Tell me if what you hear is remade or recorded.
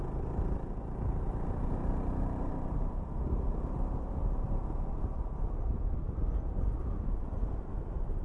recorded